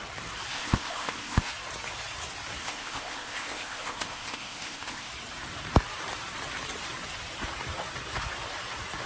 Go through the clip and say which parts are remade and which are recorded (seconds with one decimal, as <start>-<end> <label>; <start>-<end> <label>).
0.0-0.5 recorded; 0.5-1.5 remade; 1.5-2.6 recorded; 2.6-5.1 remade; 5.1-9.1 recorded